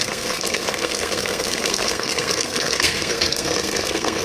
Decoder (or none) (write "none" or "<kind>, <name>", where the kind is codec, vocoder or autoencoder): codec, SNAC